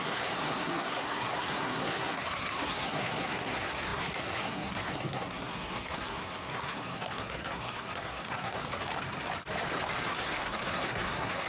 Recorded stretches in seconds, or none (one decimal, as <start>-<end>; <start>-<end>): 8.6-10.1

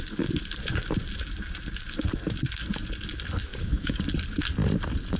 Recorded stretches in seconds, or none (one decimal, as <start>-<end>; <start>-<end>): 0.0-3.5; 4.0-5.2

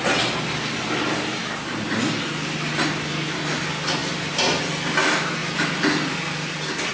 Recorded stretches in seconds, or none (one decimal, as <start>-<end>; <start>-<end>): 0.0-6.9

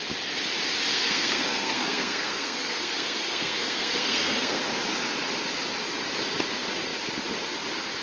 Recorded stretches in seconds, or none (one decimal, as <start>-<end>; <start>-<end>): 0.0-0.9; 4.7-8.0

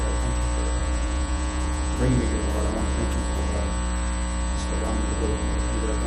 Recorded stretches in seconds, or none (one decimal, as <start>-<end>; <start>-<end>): 0.0-0.8; 3.7-4.5; 5.6-6.1